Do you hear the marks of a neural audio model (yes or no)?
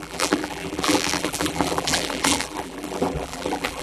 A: yes